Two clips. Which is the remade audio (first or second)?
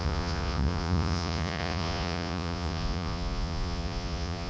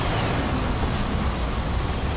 first